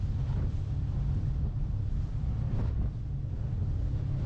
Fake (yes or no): yes